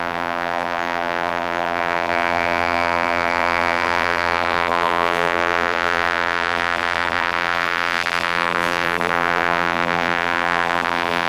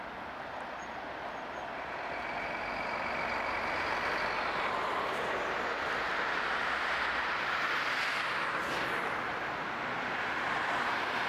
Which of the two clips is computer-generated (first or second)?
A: first